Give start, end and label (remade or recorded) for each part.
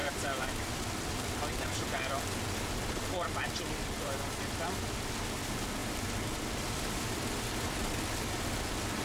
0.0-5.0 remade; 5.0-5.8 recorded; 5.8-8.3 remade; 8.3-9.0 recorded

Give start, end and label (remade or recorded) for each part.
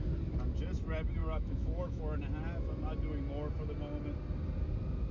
0.0-1.2 recorded; 1.2-2.0 remade; 2.0-5.1 recorded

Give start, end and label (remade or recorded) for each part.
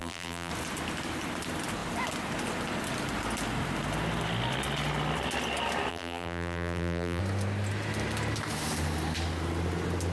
0.0-0.5 remade; 0.5-5.9 recorded; 5.9-7.2 remade; 7.2-10.1 recorded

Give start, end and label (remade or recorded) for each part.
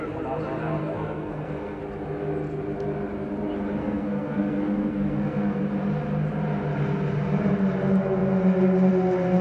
0.0-0.8 recorded; 0.8-1.8 remade; 1.8-3.8 recorded; 3.8-5.6 remade; 5.6-9.4 recorded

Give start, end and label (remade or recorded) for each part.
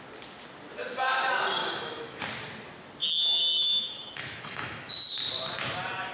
0.0-1.6 recorded; 1.6-2.2 remade; 2.2-3.0 recorded; 3.0-4.9 remade; 4.9-6.1 recorded